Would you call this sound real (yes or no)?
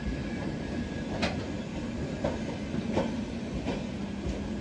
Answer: yes